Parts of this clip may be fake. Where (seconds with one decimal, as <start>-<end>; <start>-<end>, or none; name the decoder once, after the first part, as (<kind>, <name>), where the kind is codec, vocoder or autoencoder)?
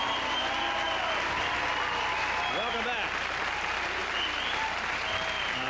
none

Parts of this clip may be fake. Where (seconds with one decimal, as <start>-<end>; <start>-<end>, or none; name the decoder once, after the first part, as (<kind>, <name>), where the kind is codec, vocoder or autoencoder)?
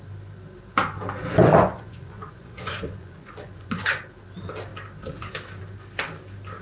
1.4-4.0 (vocoder, Vocos)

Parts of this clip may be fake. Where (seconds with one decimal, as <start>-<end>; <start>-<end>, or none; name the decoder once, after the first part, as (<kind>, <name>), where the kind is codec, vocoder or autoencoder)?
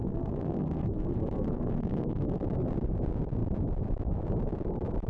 0.0-2.4 (codec, SNAC)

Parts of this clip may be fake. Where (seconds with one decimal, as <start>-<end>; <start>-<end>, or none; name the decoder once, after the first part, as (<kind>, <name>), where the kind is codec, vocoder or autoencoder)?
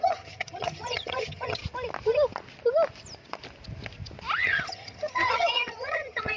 0.0-1.6 (vocoder, HiFi-GAN); 4.4-6.4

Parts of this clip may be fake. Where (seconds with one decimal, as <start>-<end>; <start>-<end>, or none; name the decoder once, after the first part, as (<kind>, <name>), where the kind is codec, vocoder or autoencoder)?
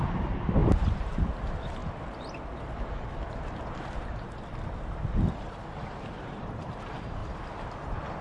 0.0-1.8 (vocoder, BigVGAN v2); 3.2-4.5; 5.4-7.2